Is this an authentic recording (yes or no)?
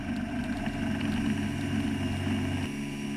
yes